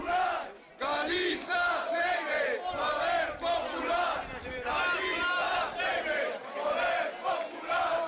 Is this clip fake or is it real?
fake